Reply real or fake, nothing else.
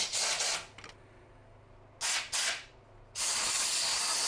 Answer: real